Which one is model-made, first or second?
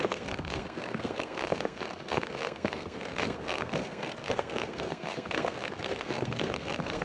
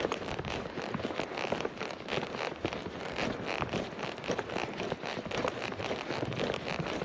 first